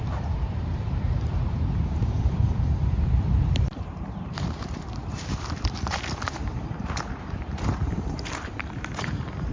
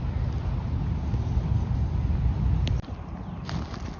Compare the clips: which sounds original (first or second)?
second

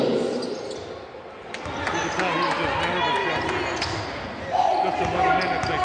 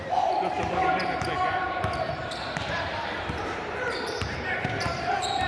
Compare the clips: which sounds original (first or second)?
first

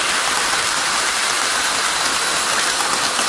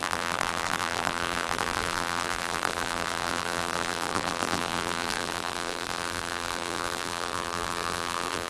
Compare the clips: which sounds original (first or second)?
first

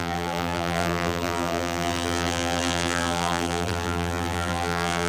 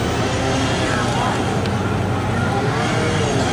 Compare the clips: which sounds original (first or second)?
second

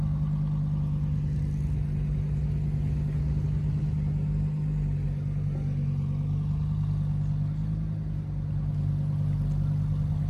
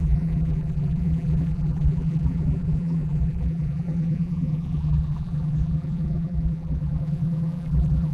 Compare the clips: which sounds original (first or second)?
first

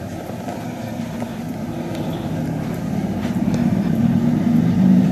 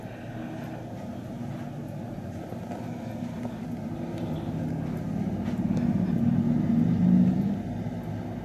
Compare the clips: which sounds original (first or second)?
second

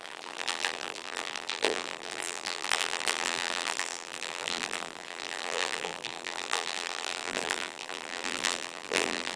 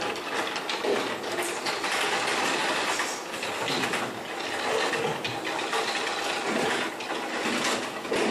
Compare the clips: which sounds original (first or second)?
second